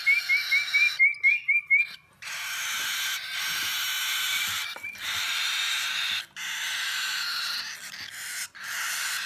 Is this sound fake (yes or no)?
no